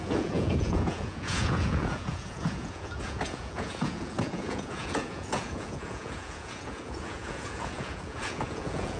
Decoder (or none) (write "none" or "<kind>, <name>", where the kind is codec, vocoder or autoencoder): vocoder, Vocos